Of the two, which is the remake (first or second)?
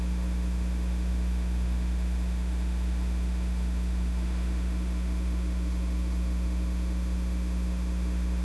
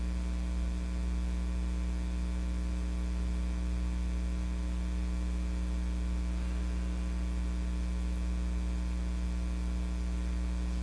first